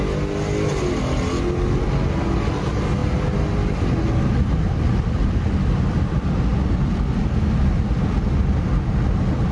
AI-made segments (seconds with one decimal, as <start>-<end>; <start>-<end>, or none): none